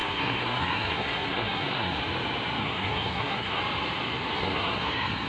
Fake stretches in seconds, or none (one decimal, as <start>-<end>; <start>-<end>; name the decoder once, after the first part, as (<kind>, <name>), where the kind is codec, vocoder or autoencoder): 0.0-2.0 (codec, SNAC); 2.6-3.6; 4.3-5.3